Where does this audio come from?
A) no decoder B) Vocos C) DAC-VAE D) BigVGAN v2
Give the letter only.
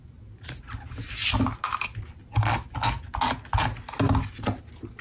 A